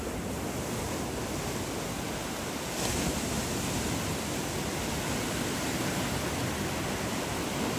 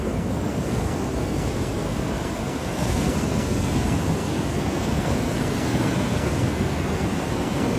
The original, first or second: first